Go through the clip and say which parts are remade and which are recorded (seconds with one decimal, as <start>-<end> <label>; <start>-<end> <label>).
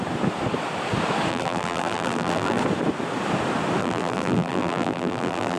0.0-1.3 recorded; 1.3-2.6 remade; 2.6-3.8 recorded; 3.8-5.6 remade